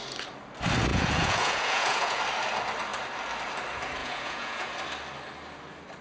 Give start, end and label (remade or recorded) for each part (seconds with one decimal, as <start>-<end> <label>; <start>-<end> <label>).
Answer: 0.0-0.9 recorded; 0.9-2.2 remade; 2.2-4.0 recorded; 4.0-4.7 remade; 4.7-6.0 recorded

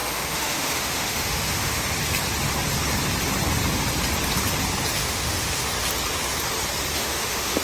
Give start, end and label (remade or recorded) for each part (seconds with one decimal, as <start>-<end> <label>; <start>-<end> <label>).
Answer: 0.0-1.8 remade; 1.8-5.0 recorded; 5.0-5.7 remade; 5.7-6.9 recorded; 6.9-7.6 remade

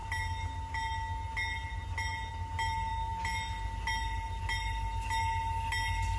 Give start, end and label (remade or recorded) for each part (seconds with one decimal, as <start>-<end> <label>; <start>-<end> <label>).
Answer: 0.0-6.2 recorded

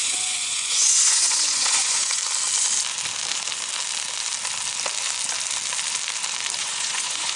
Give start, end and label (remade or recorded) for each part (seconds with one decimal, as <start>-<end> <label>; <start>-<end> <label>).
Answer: 0.0-2.2 remade; 2.2-6.6 recorded; 6.6-7.4 remade